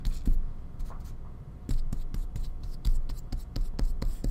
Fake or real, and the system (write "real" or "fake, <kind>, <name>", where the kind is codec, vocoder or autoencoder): real